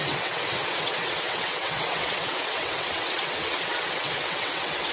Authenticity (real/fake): fake